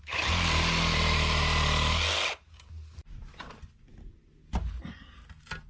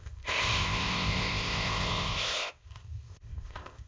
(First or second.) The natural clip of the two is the first